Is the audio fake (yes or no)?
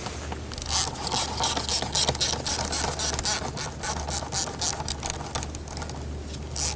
no